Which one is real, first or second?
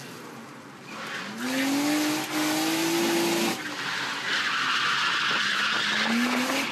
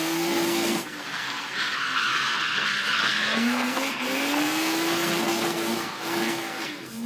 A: first